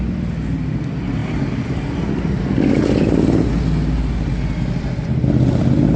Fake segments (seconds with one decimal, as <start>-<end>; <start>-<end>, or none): none